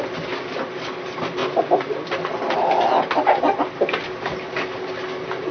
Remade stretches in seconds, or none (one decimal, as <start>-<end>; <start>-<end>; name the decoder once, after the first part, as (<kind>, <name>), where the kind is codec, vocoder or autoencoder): none